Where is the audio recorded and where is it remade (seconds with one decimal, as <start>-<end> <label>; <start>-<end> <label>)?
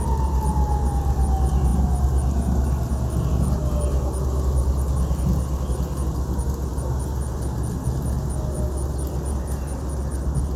0.0-10.6 recorded